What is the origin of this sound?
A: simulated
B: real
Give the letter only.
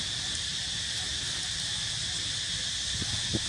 B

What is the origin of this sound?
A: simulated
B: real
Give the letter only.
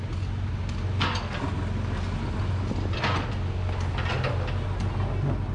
B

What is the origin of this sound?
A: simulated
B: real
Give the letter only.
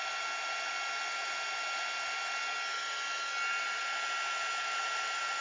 B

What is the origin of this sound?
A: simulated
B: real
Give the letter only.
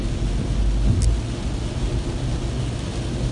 B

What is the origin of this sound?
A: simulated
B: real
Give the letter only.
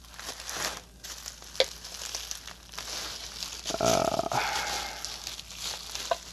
B